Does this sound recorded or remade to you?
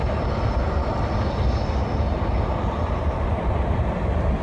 recorded